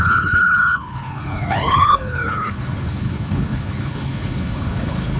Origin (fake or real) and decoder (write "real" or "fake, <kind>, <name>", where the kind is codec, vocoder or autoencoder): fake, codec, HILCodec